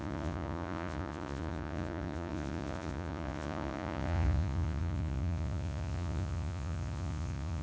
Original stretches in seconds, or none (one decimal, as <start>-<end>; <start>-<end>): none

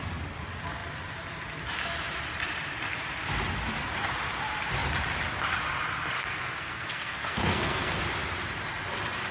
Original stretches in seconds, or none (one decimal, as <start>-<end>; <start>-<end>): 0.0-6.2; 8.0-9.3

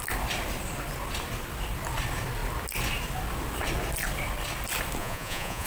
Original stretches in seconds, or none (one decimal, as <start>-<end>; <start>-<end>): 0.0-5.0

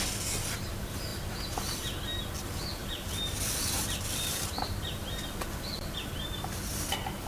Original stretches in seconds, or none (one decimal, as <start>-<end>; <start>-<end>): 0.0-1.1; 1.8-2.8; 6.1-7.3